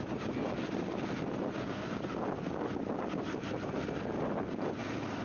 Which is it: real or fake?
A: real